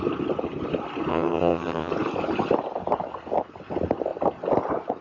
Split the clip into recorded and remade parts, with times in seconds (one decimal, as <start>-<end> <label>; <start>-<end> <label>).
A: 0.0-1.1 recorded; 1.1-1.9 remade; 1.9-5.0 recorded